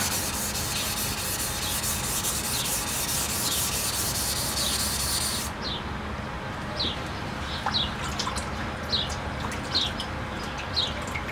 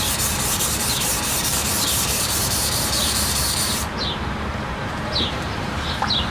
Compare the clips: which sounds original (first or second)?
first